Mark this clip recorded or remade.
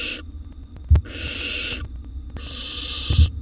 recorded